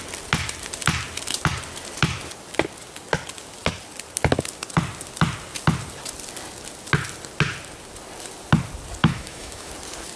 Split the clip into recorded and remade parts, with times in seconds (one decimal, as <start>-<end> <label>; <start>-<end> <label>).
0.0-9.0 recorded; 9.0-9.7 remade; 9.7-10.2 recorded